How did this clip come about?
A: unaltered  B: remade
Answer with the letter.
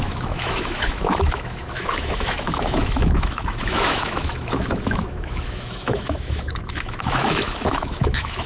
B